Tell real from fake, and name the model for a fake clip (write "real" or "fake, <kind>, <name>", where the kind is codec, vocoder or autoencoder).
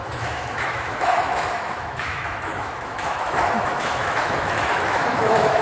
fake, autoencoder, DAC-VAE